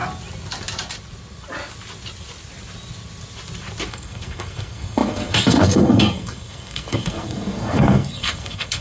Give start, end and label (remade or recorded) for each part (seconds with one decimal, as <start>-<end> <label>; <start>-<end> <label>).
0.0-3.9 recorded; 3.9-8.8 remade